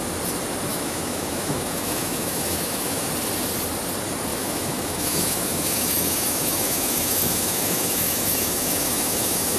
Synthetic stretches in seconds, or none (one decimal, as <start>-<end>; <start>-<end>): 0.7-3.1; 4.3-9.6